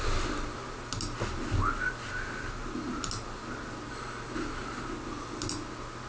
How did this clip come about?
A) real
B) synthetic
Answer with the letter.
A